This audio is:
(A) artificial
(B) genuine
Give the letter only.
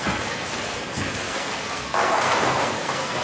A